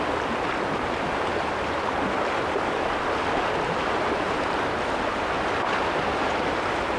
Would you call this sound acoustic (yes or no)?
yes